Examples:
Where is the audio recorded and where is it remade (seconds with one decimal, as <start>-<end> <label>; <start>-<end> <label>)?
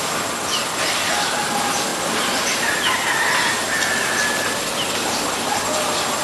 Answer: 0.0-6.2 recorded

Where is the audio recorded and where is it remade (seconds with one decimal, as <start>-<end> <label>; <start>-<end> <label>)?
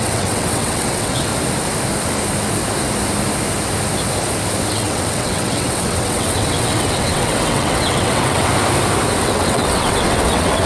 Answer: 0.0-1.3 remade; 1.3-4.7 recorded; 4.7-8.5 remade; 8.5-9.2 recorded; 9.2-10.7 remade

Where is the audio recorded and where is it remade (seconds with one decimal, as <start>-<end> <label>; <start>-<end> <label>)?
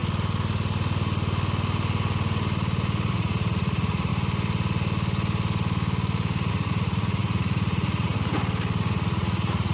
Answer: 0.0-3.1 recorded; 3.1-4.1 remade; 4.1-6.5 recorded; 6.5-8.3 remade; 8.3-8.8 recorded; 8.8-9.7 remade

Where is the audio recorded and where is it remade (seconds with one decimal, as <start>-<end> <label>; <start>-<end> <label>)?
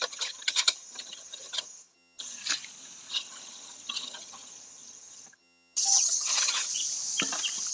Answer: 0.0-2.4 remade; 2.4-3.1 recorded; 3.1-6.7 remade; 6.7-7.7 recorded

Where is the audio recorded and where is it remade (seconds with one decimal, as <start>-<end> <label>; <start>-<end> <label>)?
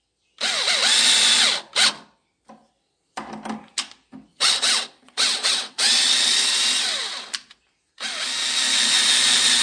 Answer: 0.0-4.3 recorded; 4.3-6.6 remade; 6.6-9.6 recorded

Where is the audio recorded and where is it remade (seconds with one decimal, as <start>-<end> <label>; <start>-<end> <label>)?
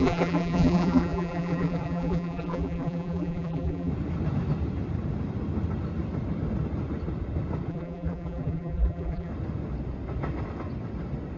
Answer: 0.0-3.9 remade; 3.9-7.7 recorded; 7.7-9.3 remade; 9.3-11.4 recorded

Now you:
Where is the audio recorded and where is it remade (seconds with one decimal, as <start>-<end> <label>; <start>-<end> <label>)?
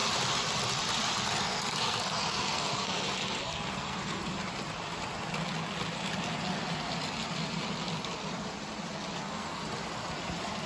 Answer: 0.0-1.4 recorded; 1.4-4.2 remade; 4.2-9.2 recorded; 9.2-9.6 remade; 9.6-10.7 recorded